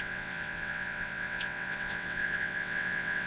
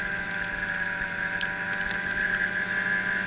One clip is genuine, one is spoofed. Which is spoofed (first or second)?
first